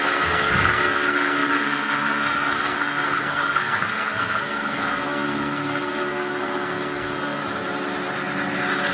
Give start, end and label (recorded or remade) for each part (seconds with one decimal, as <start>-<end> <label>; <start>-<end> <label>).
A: 0.0-7.4 remade; 7.4-8.9 recorded